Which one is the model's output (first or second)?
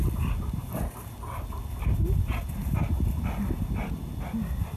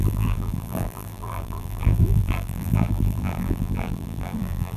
second